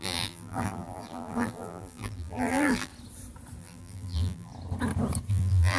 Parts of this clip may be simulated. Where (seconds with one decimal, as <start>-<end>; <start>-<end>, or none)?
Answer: 0.0-2.9; 3.6-4.5; 5.3-5.8